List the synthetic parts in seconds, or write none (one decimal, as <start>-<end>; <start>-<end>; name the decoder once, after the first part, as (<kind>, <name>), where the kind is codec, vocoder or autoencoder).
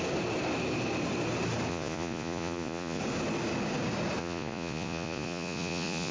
1.7-3.0 (vocoder, Vocos); 4.2-6.1